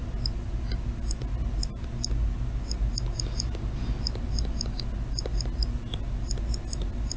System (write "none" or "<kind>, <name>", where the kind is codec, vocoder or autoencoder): none